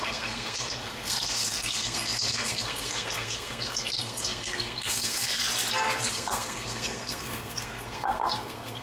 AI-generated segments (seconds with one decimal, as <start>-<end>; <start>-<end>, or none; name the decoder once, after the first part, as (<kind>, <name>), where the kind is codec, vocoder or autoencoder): 0.0-5.4 (codec, SNAC); 6.1-8.8